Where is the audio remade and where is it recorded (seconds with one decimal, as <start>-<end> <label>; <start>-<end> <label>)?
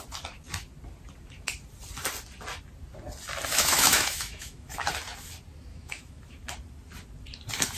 0.0-3.5 recorded; 3.5-4.9 remade; 4.9-5.7 recorded; 5.7-6.2 remade; 6.2-7.8 recorded